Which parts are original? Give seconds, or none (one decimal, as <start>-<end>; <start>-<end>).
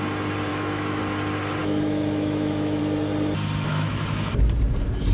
0.0-0.5; 1.0-1.6; 2.8-3.7; 4.3-5.1